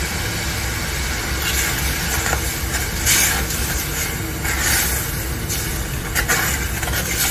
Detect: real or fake real